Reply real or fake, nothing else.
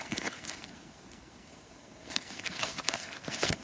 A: fake